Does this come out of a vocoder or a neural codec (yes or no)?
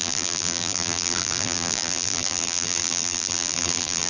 yes